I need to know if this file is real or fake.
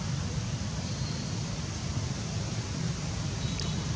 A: fake